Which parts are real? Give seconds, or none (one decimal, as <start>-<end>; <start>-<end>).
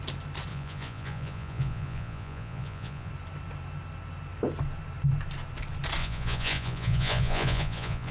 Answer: 0.0-0.5; 3.1-6.0